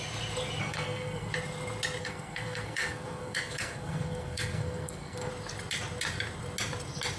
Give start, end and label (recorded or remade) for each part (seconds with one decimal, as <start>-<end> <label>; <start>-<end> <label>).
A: 0.0-0.6 recorded; 0.6-1.3 remade; 1.3-2.0 recorded; 2.0-5.3 remade; 5.3-7.2 recorded